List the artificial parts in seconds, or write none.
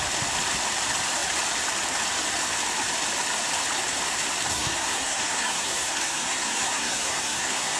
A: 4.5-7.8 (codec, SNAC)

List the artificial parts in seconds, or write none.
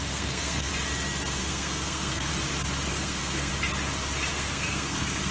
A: 0.0-0.7 (codec, SNAC); 1.4-2.3; 2.9-3.5; 4.3-5.3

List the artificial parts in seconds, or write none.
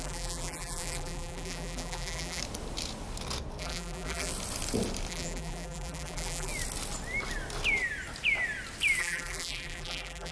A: 0.0-2.4 (vocoder, BigVGAN v2); 3.6-4.3; 5.1-6.5; 9.0-10.3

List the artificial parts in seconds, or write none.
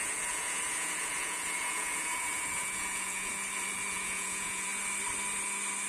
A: 0.0-3.3 (vocoder, Vocos); 3.9-4.7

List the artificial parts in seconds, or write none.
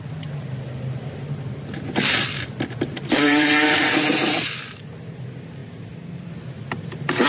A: 1.0-4.8 (vocoder, BigVGAN v2); 5.6-6.3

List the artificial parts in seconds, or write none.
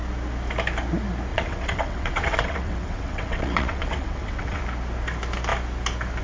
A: 1.3-4.6 (vocoder, WaveNeXt)